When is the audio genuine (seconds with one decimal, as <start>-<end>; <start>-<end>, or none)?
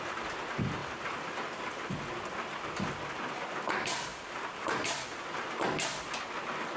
0.0-4.1; 5.0-6.8